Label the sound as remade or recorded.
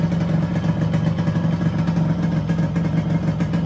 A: recorded